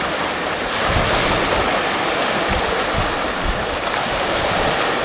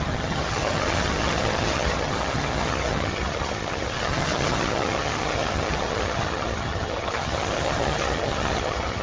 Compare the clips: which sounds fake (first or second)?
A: second